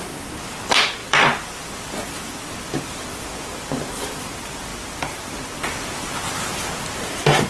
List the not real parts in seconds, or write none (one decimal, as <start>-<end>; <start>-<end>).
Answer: 1.0-3.4; 4.7-6.5